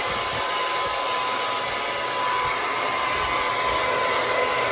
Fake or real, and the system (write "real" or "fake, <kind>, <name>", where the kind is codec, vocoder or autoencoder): real